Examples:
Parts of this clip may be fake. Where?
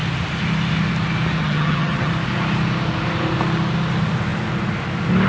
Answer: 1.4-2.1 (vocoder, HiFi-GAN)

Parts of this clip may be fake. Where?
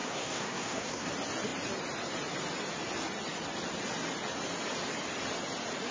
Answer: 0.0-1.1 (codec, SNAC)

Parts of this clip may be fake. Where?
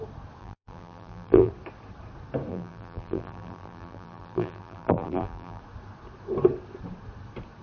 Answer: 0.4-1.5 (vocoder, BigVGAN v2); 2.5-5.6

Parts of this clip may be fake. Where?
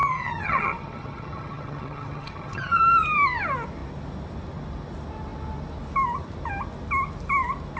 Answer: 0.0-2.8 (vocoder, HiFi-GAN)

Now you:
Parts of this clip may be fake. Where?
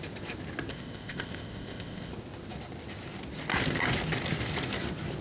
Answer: 0.7-2.1 (codec, ZipCodec)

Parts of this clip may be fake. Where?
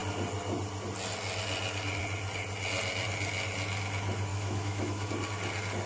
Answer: 4.3-5.1 (autoencoder, DAC-VAE)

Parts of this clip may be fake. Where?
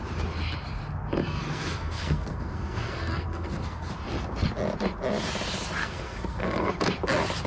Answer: 1.2-3.9 (codec, SNAC); 5.8-6.7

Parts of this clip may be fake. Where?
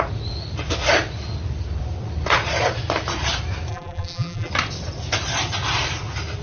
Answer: 3.7-4.5 (vocoder, BigVGAN v2)